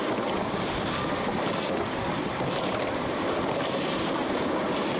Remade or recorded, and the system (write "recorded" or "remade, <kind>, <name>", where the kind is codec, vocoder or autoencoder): recorded